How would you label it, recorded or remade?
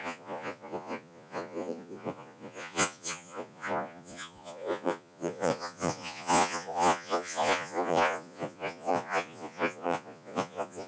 remade